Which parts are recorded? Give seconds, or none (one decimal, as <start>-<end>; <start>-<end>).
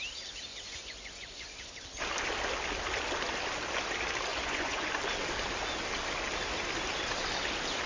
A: 0.0-0.5; 1.7-4.3; 4.9-7.9